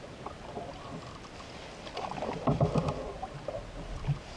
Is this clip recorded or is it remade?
recorded